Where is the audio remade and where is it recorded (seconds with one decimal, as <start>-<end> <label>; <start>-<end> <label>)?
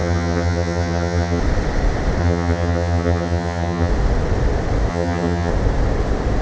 0.0-1.4 remade; 1.4-2.2 recorded; 2.2-3.9 remade; 3.9-4.9 recorded; 4.9-5.5 remade; 5.5-6.4 recorded